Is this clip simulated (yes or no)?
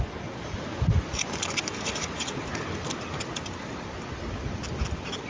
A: no